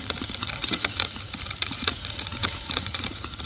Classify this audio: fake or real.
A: fake